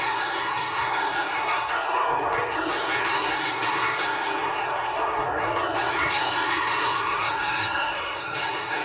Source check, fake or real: fake